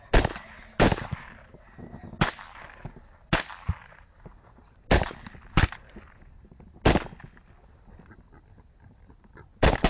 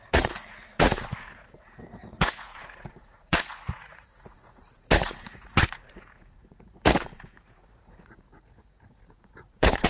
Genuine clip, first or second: first